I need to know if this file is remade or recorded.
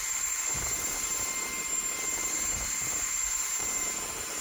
remade